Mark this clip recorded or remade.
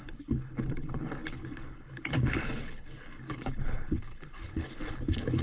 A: remade